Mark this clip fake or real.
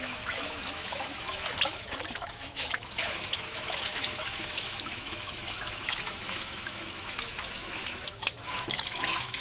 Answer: fake